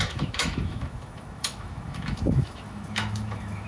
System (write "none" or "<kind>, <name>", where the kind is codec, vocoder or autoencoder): autoencoder, DAC-VAE